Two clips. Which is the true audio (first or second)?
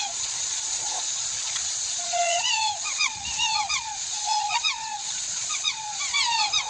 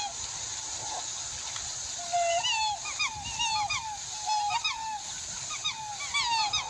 second